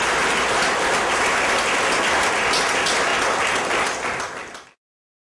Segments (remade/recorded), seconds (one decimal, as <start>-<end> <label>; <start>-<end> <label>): 0.0-5.3 recorded